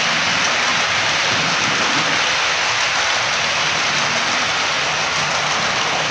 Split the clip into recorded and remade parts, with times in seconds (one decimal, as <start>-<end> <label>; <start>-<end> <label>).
0.0-6.1 recorded